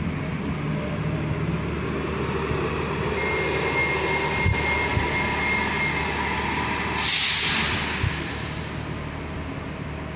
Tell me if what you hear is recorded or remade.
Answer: recorded